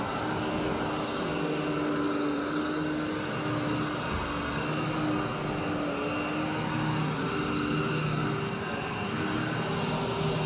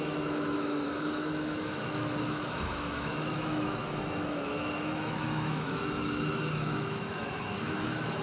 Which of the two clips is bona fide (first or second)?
first